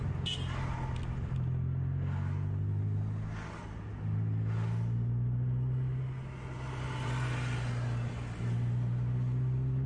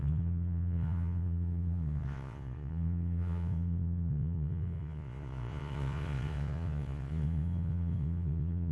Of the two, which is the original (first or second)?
first